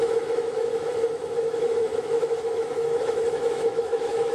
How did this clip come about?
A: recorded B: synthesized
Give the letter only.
B